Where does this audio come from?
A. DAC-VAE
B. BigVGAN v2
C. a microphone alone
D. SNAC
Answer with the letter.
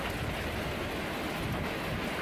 C